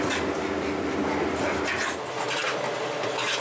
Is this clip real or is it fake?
real